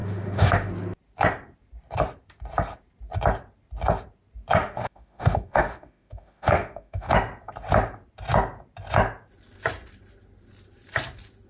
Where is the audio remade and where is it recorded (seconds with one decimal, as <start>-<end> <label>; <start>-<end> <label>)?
0.0-0.7 remade; 0.7-4.6 recorded; 4.6-7.1 remade; 7.1-11.5 recorded